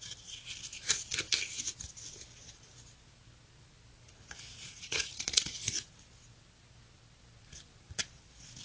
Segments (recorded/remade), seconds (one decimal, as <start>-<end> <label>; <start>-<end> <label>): 0.0-4.5 recorded; 4.5-5.4 remade; 5.4-8.6 recorded